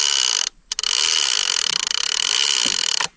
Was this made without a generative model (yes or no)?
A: yes